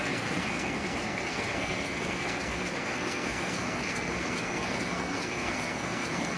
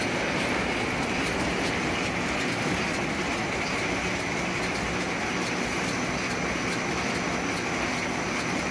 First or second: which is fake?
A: first